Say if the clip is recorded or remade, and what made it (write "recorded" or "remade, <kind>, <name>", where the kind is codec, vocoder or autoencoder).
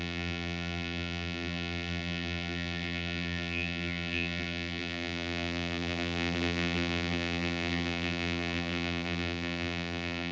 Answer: remade, vocoder, BigVGAN v2